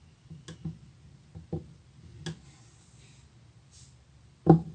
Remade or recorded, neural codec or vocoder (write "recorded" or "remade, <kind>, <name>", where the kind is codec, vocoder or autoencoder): recorded